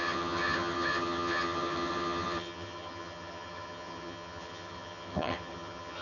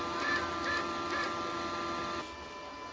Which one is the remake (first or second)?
first